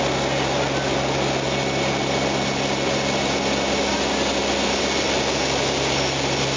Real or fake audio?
real